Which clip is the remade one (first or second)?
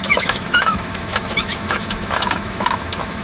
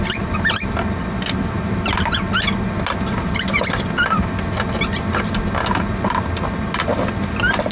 first